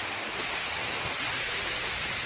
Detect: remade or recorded recorded